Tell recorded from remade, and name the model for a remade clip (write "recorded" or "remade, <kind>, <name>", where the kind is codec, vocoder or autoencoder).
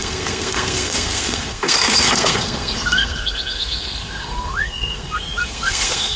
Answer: remade, codec, SNAC